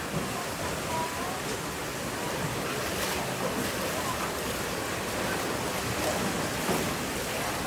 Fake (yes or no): no